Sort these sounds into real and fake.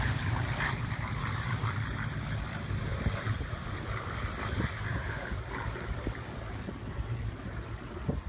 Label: fake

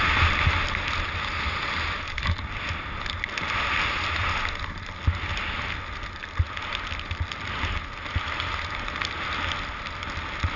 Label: real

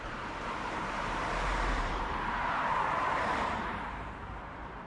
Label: fake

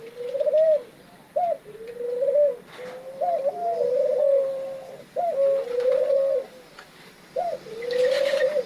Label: fake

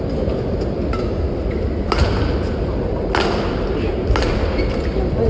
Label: real